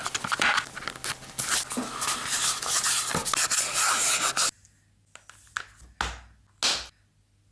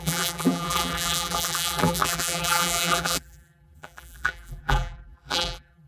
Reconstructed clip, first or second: second